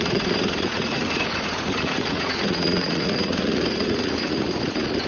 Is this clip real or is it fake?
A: fake